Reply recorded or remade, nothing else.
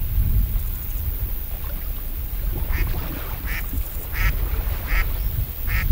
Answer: recorded